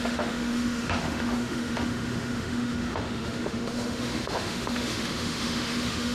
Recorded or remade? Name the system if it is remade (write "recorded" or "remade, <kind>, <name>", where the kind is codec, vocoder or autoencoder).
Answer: remade, autoencoder, DAC-VAE